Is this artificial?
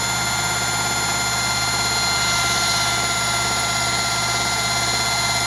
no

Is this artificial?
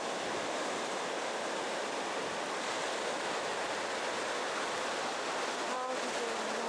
no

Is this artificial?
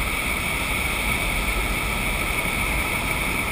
no